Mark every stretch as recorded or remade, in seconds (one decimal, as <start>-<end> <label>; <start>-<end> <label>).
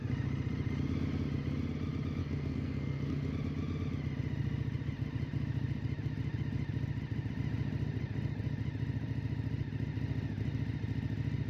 0.0-2.2 recorded; 2.2-3.3 remade; 3.3-11.5 recorded